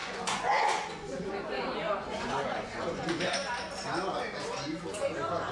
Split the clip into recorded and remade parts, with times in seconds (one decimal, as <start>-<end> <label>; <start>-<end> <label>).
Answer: 0.0-1.3 remade; 1.3-2.0 recorded; 2.0-3.5 remade; 3.5-5.5 recorded